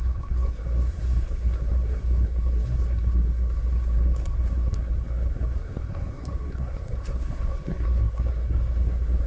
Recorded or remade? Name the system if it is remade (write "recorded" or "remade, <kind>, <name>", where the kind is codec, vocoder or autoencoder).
remade, codec, SNAC